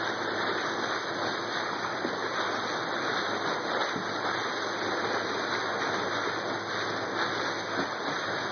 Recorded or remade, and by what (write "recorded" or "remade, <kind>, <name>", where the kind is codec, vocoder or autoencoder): recorded